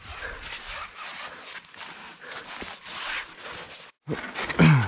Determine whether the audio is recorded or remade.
recorded